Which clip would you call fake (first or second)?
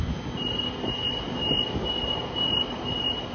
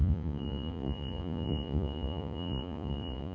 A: second